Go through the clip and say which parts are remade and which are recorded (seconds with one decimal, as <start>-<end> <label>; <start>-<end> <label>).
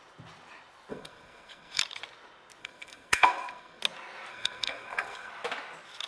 0.0-0.9 recorded; 0.9-1.8 remade; 1.8-2.6 recorded; 2.6-3.8 remade; 3.8-4.3 recorded; 4.3-5.3 remade; 5.3-6.1 recorded